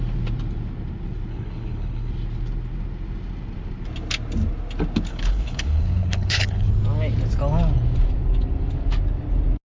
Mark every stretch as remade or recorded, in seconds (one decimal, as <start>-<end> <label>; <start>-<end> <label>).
0.0-1.3 recorded; 1.3-2.1 remade; 2.1-5.1 recorded; 5.1-6.7 remade; 6.7-9.7 recorded